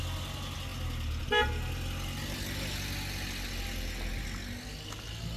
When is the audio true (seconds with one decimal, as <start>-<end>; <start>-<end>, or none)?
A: 0.0-5.4